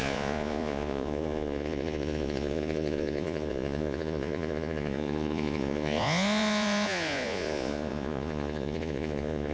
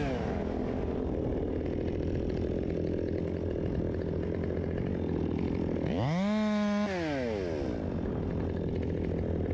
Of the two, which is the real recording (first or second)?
second